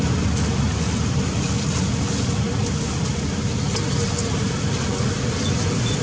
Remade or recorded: recorded